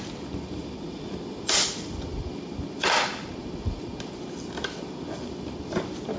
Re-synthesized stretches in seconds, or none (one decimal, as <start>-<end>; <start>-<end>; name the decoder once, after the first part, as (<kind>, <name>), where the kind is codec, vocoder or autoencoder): 0.6-1.5 (vocoder, BigVGAN v2)